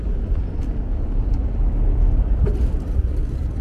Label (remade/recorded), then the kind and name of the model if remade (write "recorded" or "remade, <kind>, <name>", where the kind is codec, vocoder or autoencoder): recorded